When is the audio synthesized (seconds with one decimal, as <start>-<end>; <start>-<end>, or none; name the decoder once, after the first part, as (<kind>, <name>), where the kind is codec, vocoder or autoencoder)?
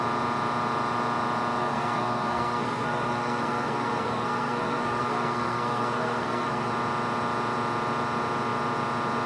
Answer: 1.6-6.7 (codec, SNAC)